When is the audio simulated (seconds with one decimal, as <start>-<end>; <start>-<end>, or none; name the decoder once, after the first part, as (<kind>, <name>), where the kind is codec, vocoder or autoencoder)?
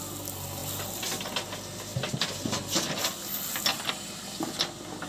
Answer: none